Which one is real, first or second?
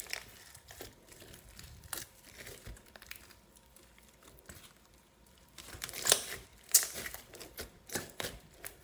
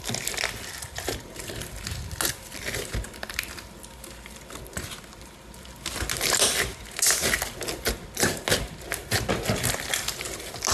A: second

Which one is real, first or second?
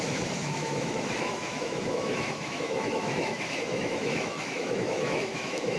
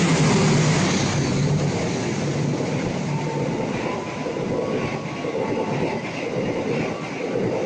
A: second